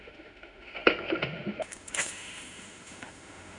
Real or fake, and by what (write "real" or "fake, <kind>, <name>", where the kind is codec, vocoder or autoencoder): fake, autoencoder, DAC-VAE